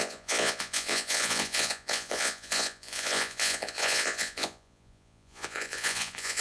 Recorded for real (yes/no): no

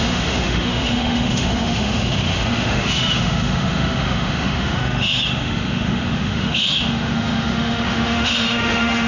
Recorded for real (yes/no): no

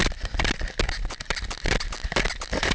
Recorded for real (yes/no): yes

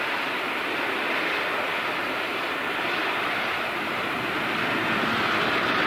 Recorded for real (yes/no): yes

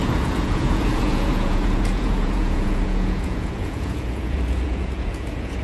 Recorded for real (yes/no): no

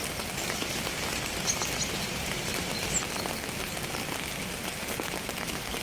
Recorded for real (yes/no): yes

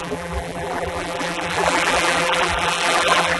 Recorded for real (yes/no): no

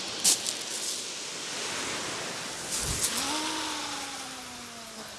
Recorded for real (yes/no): yes